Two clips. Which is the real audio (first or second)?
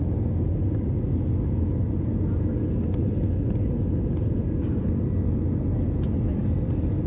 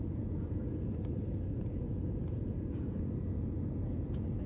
first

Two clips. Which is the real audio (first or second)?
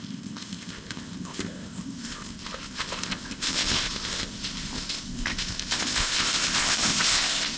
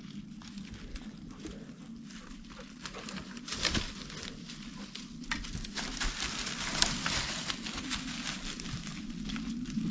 second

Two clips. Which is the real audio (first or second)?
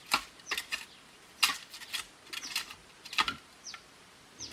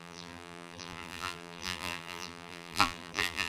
first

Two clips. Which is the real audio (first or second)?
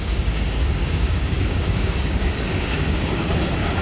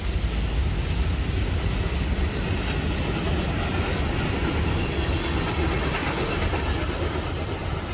second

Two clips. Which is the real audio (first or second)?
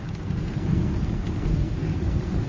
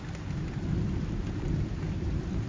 second